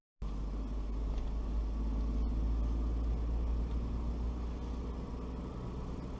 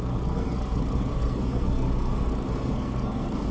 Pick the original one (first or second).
first